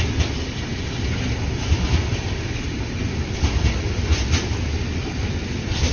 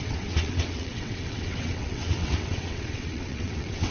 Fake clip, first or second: second